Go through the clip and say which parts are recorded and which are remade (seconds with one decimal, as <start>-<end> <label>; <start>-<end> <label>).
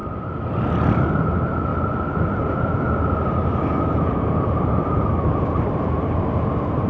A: 0.0-1.7 remade; 1.7-5.4 recorded; 5.4-6.9 remade